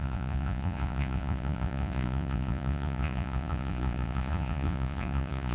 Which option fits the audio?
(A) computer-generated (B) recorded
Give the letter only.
A